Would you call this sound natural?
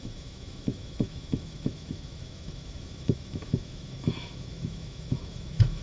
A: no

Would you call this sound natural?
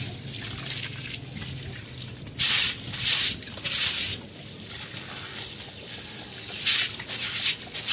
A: yes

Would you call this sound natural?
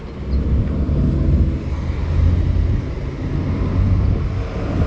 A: yes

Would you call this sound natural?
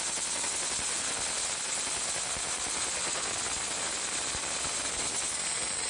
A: yes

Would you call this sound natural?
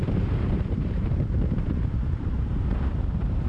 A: no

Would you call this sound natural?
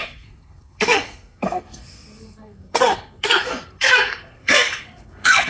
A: no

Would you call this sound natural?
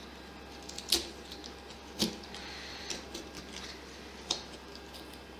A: yes